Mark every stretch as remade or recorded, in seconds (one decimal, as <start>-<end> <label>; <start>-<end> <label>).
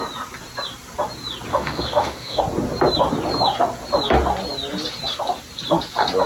0.0-1.5 recorded; 1.5-2.4 remade; 2.4-6.3 recorded